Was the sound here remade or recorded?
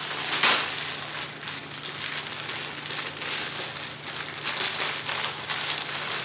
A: recorded